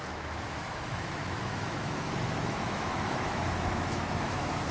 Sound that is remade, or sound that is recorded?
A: remade